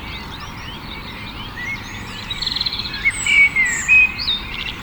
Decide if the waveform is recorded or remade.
remade